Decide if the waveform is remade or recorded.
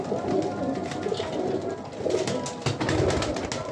recorded